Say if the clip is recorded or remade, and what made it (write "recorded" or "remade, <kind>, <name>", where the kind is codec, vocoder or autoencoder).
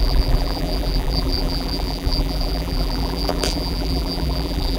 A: remade, vocoder, BigVGAN v2